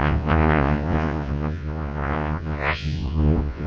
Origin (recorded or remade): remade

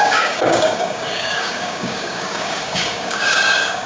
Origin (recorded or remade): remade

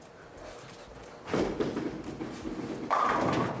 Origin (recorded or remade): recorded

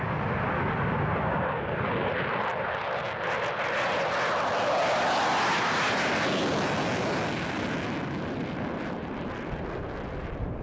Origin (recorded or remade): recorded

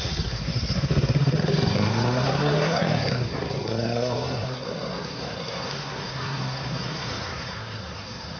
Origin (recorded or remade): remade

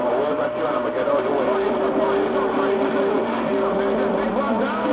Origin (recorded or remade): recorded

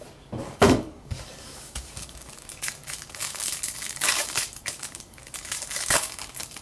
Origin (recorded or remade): remade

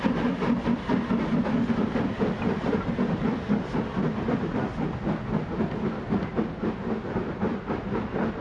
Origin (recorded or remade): recorded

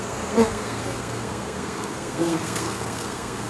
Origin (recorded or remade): remade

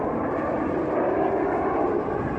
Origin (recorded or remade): recorded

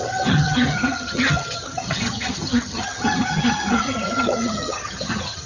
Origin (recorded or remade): remade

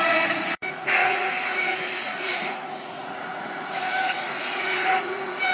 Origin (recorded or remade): remade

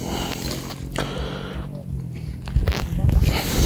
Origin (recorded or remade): recorded